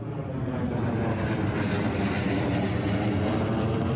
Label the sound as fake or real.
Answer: real